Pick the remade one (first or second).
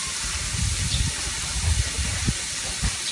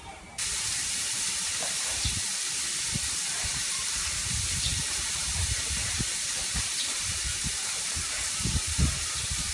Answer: second